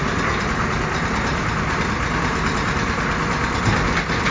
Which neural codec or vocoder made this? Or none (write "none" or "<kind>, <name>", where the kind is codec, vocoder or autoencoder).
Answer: none